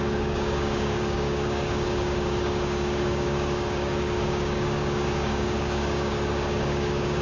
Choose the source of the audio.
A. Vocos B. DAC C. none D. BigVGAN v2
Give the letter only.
B